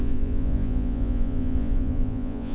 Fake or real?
fake